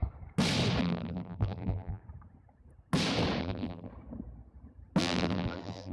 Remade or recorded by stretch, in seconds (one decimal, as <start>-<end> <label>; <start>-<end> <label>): 0.0-0.8 recorded; 0.8-2.0 remade; 2.0-3.4 recorded; 3.4-3.9 remade; 3.9-5.0 recorded; 5.0-5.9 remade